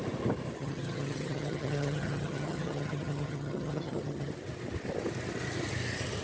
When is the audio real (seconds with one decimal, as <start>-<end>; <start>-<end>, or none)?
0.0-0.6; 4.3-6.2